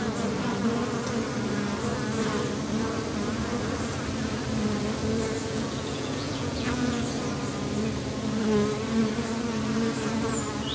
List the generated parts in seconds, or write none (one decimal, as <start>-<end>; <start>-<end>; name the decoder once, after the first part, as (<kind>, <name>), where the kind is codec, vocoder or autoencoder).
5.4-7.0 (vocoder, Vocos)